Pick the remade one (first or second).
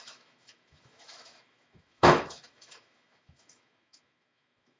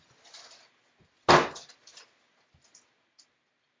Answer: first